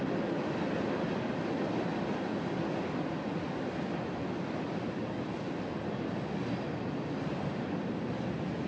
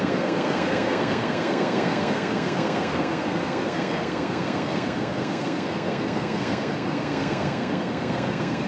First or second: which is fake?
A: second